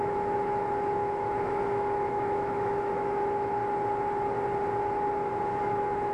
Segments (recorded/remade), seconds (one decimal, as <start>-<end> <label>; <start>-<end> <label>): 0.0-3.6 remade; 3.6-5.3 recorded; 5.3-6.1 remade